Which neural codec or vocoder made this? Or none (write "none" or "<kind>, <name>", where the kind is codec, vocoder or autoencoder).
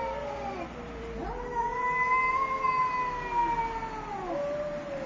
none